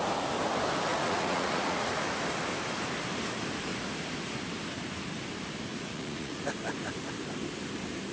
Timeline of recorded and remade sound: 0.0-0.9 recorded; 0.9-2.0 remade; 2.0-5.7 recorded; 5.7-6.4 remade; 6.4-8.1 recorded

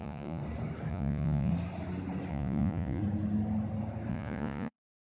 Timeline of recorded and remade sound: 0.0-0.4 remade; 0.4-0.9 recorded; 0.9-1.5 remade; 1.5-2.3 recorded; 2.3-3.0 remade; 3.0-4.1 recorded; 4.1-5.0 remade

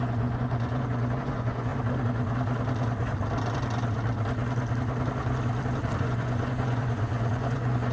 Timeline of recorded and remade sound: 0.0-1.7 remade; 1.7-6.0 recorded; 6.0-7.9 remade